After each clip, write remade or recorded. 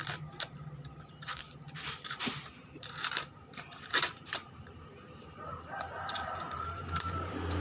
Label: remade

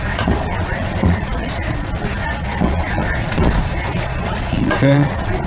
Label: remade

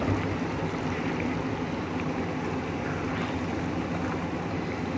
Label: recorded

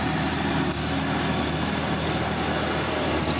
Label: recorded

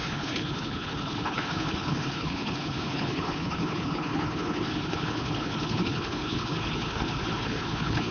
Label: remade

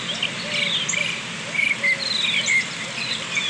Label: recorded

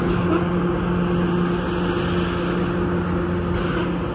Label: recorded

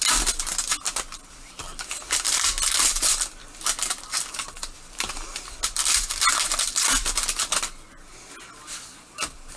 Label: recorded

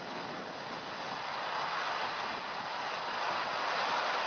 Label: recorded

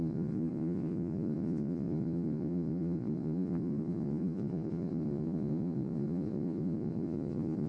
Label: remade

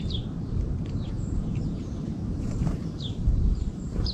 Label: remade